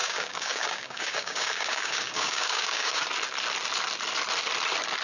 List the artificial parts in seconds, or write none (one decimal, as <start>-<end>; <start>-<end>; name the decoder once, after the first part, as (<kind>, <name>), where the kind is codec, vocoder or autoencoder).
0.0-3.0 (codec, DAC)